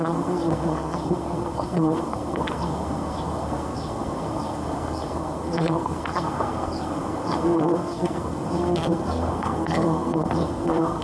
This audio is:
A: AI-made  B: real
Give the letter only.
A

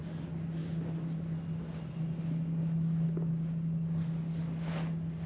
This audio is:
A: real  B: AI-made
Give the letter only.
A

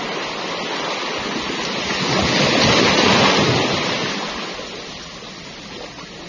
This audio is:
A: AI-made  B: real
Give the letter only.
B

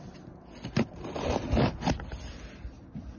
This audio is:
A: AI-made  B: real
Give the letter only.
B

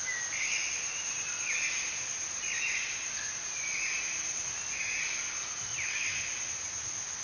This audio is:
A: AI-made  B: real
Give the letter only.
B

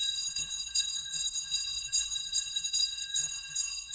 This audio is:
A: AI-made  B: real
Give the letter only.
A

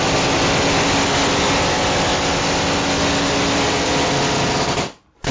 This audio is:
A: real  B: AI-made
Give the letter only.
A